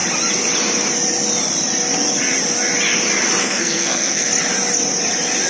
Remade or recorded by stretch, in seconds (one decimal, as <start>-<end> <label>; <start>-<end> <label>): 0.0-3.4 recorded; 3.4-4.3 remade; 4.3-5.5 recorded